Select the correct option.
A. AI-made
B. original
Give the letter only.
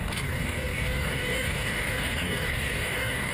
A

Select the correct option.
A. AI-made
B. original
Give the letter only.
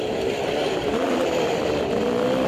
A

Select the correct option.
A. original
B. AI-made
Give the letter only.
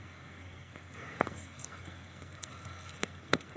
B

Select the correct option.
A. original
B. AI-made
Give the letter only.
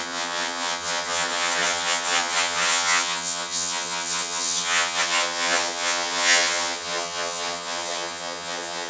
B